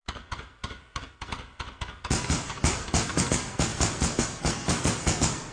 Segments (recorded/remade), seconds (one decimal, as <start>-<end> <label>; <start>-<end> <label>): 0.0-5.5 remade